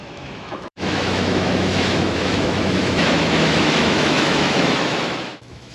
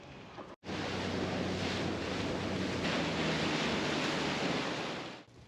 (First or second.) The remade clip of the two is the first